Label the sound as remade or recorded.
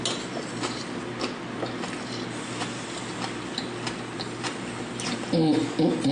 recorded